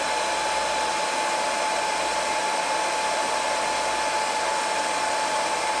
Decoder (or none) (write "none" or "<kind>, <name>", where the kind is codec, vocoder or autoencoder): none